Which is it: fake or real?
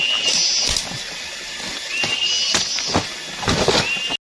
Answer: real